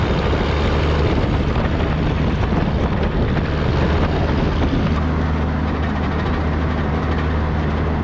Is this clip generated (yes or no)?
no